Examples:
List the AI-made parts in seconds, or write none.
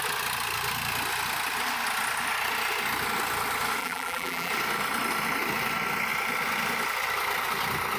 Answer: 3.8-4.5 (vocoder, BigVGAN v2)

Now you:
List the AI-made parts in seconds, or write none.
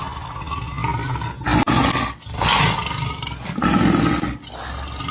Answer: none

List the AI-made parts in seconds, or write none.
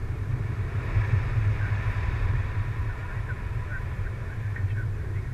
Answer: 0.0-3.0 (vocoder, BigVGAN v2); 3.8-5.3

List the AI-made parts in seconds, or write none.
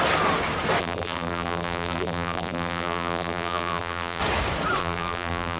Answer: 0.8-4.2 (vocoder, BigVGAN v2); 4.8-5.6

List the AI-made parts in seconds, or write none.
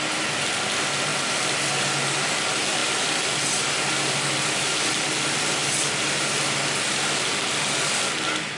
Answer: 1.1-1.7 (vocoder, BigVGAN v2); 2.8-5.0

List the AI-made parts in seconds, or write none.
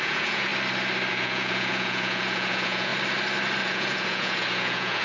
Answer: 0.0-0.5 (vocoder, Vocos); 1.1-2.9; 3.6-5.0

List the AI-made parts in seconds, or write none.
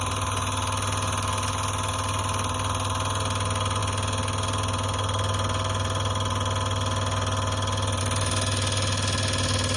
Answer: none